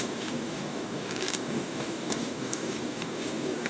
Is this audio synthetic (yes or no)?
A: yes